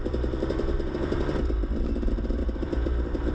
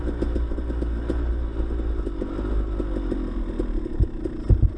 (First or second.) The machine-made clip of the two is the first